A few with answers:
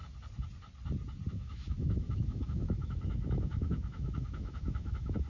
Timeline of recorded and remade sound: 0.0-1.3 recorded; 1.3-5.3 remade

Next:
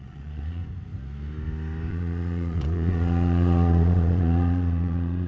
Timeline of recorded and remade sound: 0.0-0.6 remade; 0.6-1.9 recorded; 1.9-5.3 remade

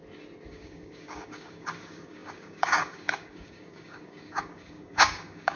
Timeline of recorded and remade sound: 0.0-0.5 recorded; 0.5-5.6 remade

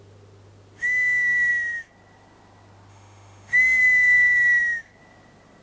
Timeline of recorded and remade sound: 0.0-0.8 recorded; 0.8-1.5 remade; 1.5-2.9 recorded; 2.9-3.8 remade; 3.8-5.6 recorded

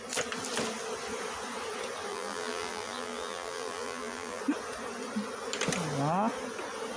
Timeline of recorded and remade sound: 0.0-2.1 recorded; 2.1-4.4 remade; 4.4-7.0 recorded